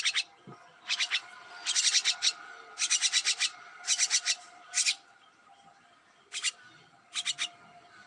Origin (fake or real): real